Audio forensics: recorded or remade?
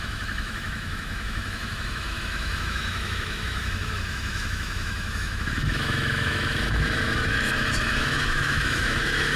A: remade